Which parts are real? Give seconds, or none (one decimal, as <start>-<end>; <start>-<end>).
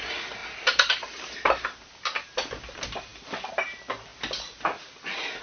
0.0-5.4